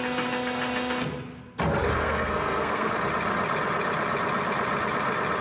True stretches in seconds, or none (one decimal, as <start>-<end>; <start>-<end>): 0.0-2.0; 2.9-5.4